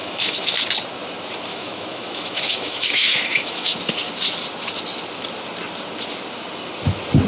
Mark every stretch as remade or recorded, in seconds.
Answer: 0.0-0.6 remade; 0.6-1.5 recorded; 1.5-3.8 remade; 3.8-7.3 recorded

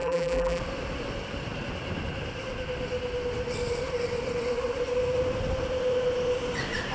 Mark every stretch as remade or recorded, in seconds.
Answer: 0.0-0.6 remade; 0.6-6.9 recorded

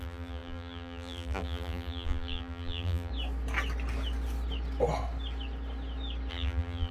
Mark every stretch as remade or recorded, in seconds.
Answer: 0.0-3.1 remade; 3.1-6.3 recorded; 6.3-6.9 remade

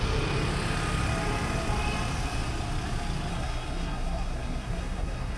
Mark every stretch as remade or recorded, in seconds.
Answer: 0.0-3.3 recorded; 3.3-5.4 remade

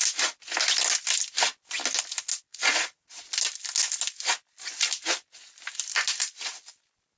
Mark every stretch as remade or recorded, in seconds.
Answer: 0.0-2.5 recorded; 2.5-3.2 remade; 3.2-7.2 recorded

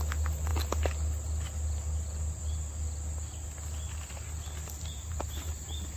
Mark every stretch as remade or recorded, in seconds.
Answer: 0.0-5.0 recorded; 5.0-5.5 remade; 5.5-6.0 recorded

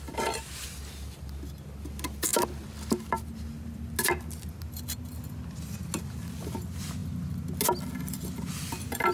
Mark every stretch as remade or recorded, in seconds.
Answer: 0.0-9.1 recorded

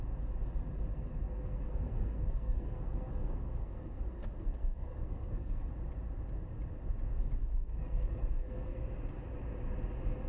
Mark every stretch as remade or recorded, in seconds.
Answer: 0.0-0.9 recorded; 0.9-5.7 remade; 5.7-7.4 recorded; 7.4-8.8 remade; 8.8-10.3 recorded